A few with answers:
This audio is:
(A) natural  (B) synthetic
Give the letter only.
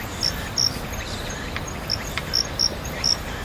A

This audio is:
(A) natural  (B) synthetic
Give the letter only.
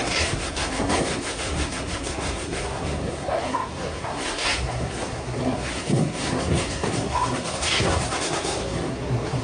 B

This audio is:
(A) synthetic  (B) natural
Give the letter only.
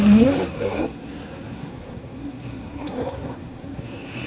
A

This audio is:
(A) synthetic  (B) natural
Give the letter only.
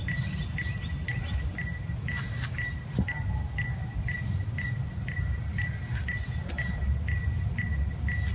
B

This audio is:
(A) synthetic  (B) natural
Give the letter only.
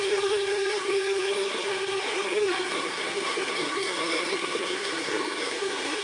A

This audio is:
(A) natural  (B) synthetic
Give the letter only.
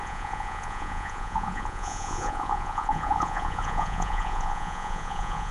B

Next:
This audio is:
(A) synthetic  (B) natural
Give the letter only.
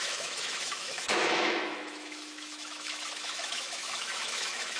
A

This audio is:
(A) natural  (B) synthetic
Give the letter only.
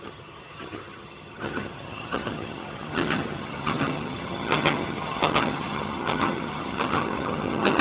B